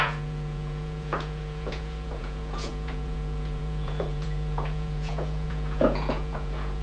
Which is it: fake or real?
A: fake